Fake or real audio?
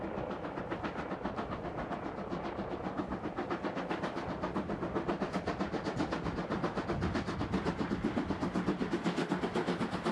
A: real